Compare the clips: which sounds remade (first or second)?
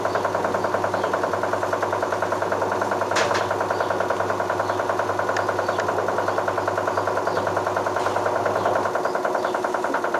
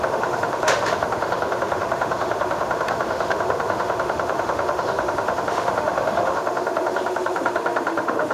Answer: second